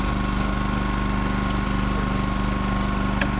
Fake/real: real